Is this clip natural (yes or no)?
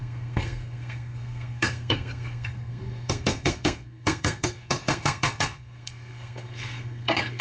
no